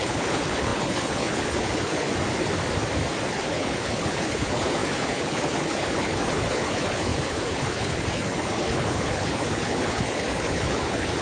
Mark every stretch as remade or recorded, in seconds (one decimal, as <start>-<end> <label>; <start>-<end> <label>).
0.0-2.1 remade; 2.1-3.3 recorded; 3.3-11.2 remade